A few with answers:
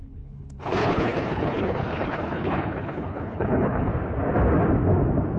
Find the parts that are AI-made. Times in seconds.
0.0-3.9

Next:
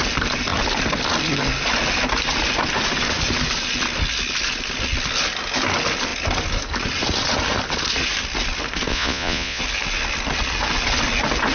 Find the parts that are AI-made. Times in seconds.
8.9-9.6

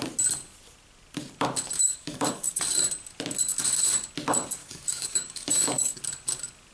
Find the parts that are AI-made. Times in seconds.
1.9-2.6; 4.6-6.0

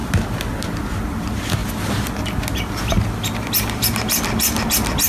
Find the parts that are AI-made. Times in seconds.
none

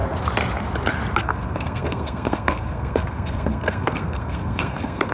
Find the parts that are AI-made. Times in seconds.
1.2-5.1

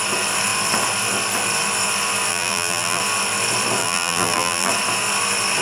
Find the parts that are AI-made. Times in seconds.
2.3-3.0; 3.8-4.7

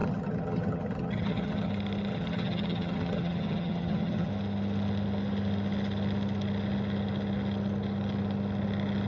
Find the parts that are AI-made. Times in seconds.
0.0-1.7; 2.1-4.3